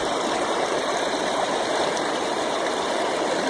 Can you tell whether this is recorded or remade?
remade